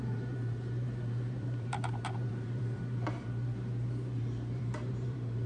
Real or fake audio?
fake